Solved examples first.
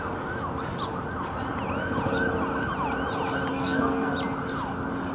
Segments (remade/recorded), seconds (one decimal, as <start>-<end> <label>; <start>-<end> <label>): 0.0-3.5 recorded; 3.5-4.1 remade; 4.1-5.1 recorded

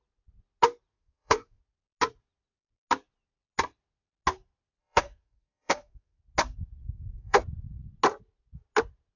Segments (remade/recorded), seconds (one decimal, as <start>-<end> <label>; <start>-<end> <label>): 0.0-0.9 recorded; 0.9-1.6 remade; 1.6-4.8 recorded; 4.8-6.2 remade; 6.2-6.8 recorded; 6.8-7.4 remade; 7.4-9.2 recorded

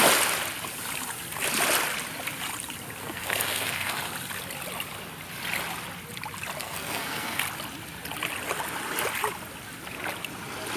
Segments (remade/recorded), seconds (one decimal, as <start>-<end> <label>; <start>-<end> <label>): 0.0-3.0 recorded; 3.0-4.0 remade; 4.0-6.6 recorded; 6.6-7.4 remade; 7.4-10.8 recorded